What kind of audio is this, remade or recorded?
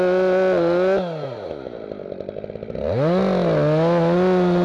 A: recorded